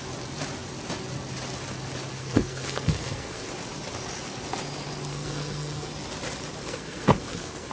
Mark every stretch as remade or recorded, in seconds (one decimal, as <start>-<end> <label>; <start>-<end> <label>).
0.0-2.1 recorded; 2.1-3.5 remade; 3.5-5.1 recorded; 5.1-5.9 remade; 5.9-6.6 recorded; 6.6-7.7 remade